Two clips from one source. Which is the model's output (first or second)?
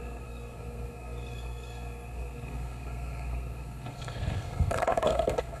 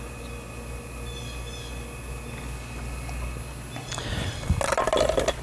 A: first